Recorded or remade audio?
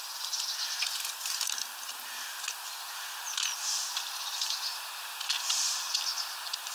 recorded